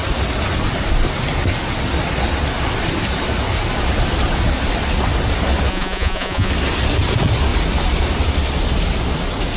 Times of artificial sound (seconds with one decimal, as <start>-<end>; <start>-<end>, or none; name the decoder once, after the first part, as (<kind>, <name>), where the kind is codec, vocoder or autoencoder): 5.7-6.5 (vocoder, Vocos)